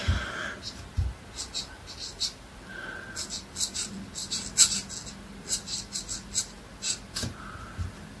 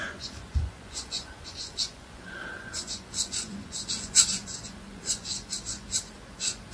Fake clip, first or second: second